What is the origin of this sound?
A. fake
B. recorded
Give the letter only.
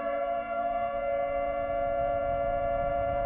A